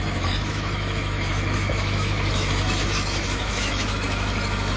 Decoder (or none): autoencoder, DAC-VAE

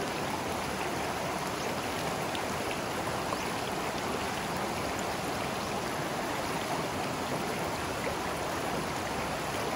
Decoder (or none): none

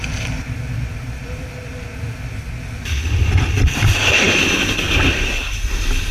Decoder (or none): none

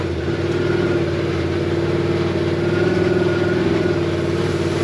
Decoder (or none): none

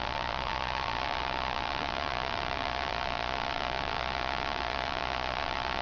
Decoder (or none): vocoder, Vocos